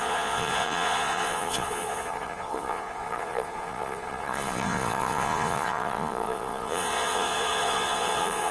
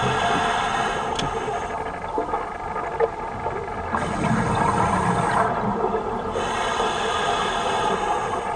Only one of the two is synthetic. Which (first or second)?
first